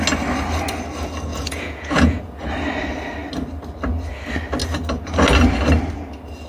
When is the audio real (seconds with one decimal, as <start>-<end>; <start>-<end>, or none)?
0.0-1.3; 2.5-6.5

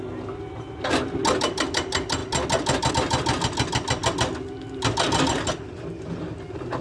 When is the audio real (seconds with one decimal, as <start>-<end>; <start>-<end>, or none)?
0.0-6.8

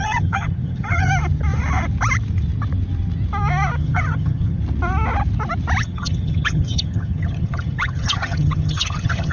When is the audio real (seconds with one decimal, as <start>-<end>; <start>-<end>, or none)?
1.1-3.8; 4.6-5.8

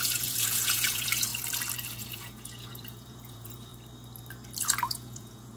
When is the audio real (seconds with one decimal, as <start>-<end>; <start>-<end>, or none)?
1.3-2.0; 3.7-4.6